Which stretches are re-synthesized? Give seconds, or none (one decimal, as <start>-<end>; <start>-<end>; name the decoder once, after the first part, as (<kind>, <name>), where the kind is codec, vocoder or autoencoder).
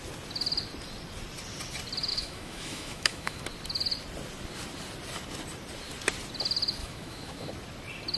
2.1-3.4 (autoencoder, DAC-VAE); 6.8-7.5